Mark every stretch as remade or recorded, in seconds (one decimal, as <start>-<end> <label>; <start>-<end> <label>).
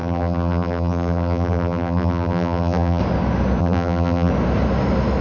0.0-3.0 remade; 3.0-3.6 recorded; 3.6-4.3 remade; 4.3-5.2 recorded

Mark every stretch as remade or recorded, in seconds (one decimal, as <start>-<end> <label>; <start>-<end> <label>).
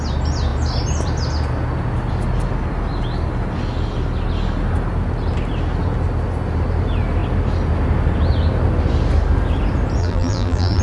0.0-10.0 recorded; 10.0-10.8 remade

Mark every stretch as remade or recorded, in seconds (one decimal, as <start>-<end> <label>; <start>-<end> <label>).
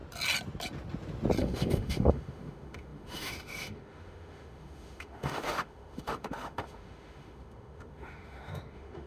0.0-1.4 recorded; 1.4-9.1 remade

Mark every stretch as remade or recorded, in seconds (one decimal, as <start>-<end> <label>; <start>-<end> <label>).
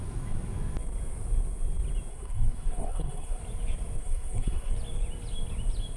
0.0-2.1 recorded; 2.1-3.4 remade; 3.4-4.0 recorded; 4.0-4.7 remade; 4.7-6.0 recorded